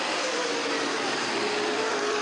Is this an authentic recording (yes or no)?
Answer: no